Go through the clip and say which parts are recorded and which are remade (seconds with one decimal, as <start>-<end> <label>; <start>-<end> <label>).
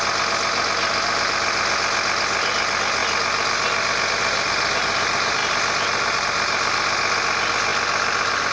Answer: 0.0-7.7 recorded; 7.7-8.5 remade